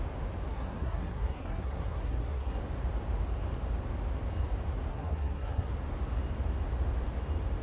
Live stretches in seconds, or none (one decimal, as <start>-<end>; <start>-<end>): 0.0-0.5; 2.6-4.9; 5.7-7.6